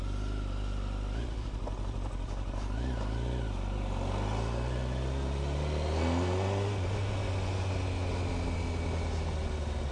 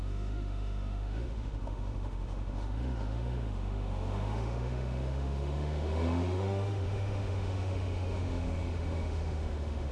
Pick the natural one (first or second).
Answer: first